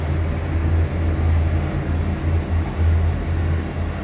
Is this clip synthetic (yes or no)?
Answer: no